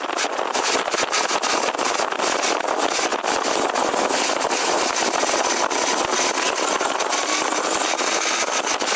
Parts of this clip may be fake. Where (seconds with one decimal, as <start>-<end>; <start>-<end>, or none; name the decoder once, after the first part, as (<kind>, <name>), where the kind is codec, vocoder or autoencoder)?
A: none